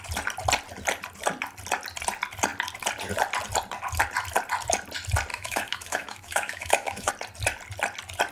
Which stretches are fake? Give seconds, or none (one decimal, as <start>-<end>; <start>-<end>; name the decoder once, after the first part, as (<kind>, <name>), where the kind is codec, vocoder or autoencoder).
5.3-7.1 (autoencoder, DAC-VAE)